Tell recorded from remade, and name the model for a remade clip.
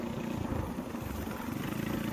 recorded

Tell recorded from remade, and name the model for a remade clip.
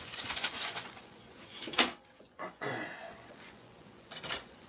remade, vocoder, Vocos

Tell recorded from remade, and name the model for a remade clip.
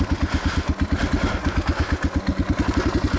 recorded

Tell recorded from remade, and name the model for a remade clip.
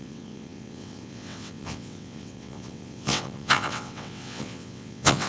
remade, vocoder, WaveNeXt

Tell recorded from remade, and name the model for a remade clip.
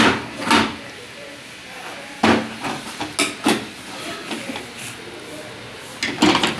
recorded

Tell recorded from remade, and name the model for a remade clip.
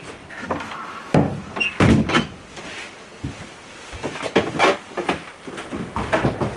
remade, vocoder, BigVGAN v2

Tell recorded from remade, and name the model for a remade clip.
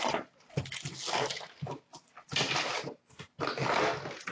recorded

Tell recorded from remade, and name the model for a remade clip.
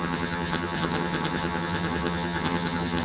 remade, vocoder, HiFi-GAN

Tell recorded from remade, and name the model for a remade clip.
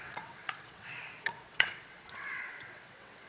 remade, vocoder, WaveNeXt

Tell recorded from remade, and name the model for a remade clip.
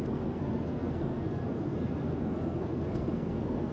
remade, codec, SNAC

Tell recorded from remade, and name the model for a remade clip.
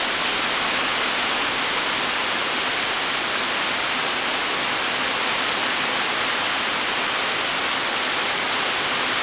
recorded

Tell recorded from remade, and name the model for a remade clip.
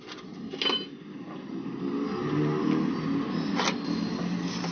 recorded